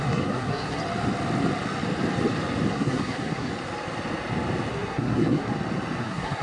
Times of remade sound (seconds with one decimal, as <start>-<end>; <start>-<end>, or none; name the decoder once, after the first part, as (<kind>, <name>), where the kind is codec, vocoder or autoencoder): 0.0-0.8 (codec, SNAC); 2.7-3.5; 4.7-5.5; 6.0-6.4